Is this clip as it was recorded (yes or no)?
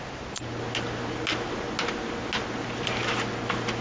yes